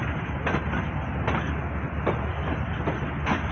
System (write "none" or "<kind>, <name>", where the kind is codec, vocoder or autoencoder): none